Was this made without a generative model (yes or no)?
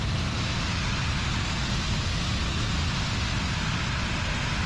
yes